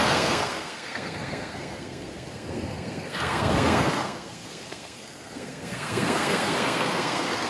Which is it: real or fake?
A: fake